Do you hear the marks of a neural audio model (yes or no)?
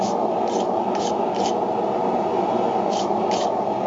no